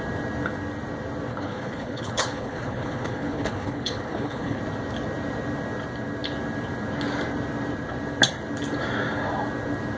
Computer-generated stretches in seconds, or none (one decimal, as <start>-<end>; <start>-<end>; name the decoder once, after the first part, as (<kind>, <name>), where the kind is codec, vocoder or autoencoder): 1.3-4.6 (codec, HILCodec)